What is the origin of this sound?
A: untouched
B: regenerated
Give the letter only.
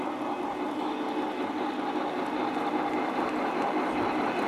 A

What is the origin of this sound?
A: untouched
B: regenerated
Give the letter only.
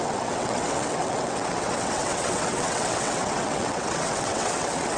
B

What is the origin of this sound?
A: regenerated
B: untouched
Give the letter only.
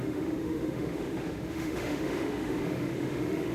A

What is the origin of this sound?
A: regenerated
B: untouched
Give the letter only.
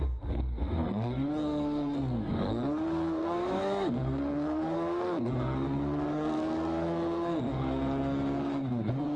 A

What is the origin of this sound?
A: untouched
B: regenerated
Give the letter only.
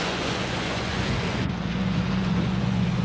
B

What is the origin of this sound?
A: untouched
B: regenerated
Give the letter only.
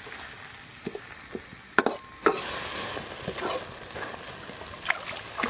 A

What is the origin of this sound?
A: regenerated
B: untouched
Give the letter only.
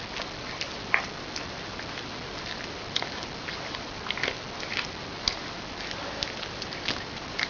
B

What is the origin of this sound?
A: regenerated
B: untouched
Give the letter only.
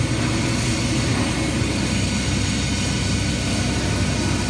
B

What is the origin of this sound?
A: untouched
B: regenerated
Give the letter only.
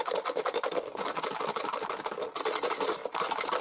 A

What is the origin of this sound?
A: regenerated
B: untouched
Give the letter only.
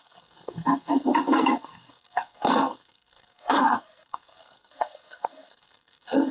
A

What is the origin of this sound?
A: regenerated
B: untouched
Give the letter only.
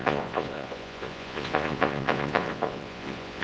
A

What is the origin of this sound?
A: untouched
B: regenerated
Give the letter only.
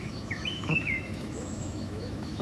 B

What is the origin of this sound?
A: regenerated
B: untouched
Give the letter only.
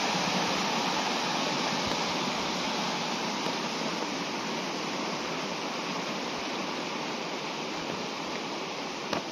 B